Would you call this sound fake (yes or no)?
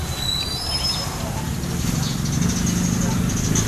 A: no